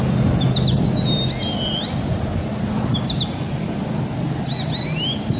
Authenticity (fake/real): real